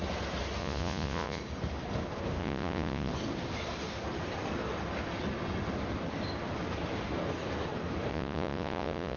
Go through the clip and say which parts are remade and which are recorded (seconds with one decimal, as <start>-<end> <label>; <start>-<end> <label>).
0.0-0.6 recorded; 0.6-1.4 remade; 1.4-2.4 recorded; 2.4-3.1 remade; 3.1-8.1 recorded; 8.1-9.2 remade